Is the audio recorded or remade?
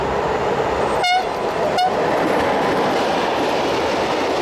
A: recorded